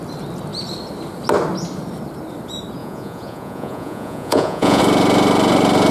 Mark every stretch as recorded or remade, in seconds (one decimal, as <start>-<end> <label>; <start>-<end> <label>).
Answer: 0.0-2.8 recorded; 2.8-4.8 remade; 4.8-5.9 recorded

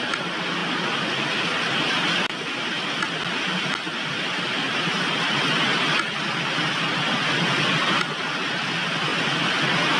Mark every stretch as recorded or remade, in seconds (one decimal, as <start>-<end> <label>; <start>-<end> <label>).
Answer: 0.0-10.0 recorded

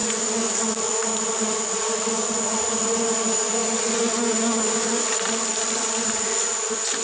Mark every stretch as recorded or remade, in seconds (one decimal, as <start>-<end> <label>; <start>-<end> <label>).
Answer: 0.0-7.0 recorded